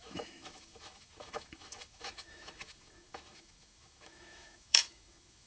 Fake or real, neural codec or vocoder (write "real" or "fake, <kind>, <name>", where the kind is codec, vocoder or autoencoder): fake, autoencoder, DAC-VAE